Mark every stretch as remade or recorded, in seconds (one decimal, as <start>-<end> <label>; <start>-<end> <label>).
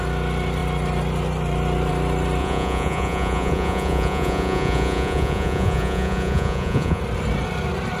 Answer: 0.0-2.4 recorded; 2.4-7.0 remade; 7.0-8.0 recorded